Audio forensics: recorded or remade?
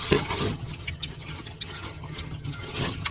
remade